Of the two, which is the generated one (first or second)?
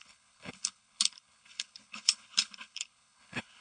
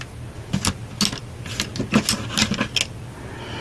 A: first